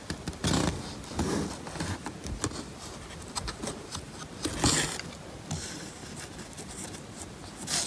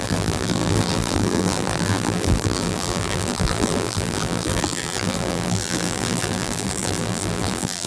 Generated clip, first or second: second